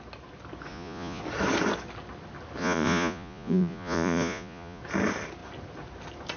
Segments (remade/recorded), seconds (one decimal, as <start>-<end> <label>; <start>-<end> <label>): 0.0-0.7 recorded; 0.7-1.2 remade; 1.2-2.6 recorded; 2.6-4.8 remade; 4.8-6.4 recorded